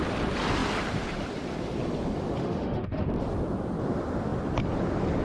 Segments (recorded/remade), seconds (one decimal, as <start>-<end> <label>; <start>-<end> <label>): 0.0-2.4 recorded; 2.4-3.1 remade; 3.1-5.2 recorded